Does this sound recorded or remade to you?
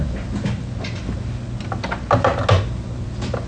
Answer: recorded